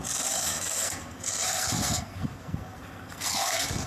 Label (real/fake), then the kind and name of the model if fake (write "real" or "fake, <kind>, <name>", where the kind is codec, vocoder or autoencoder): fake, codec, SNAC